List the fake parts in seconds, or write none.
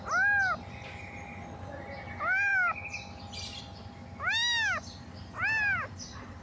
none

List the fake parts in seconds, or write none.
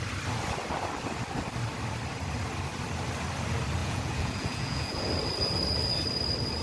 3.8-5.1 (vocoder, Vocos)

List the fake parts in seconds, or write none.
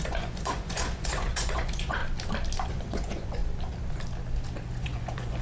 0.0-2.0 (vocoder, Vocos); 2.7-3.4; 4.7-5.4